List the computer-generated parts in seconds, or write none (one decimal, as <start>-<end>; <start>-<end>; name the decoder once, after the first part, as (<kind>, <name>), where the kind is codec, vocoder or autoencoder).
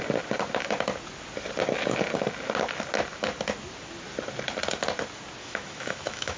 5.4-6.4 (autoencoder, DAC-VAE)